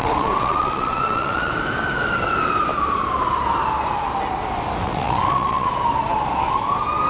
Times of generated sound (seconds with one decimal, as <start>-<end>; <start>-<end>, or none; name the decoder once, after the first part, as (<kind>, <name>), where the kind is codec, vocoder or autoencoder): 0.0-1.5 (vocoder, WaveNeXt); 4.8-5.7